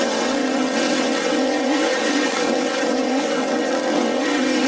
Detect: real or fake fake